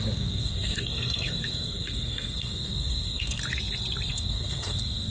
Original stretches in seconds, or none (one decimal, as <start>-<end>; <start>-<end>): 3.4-4.1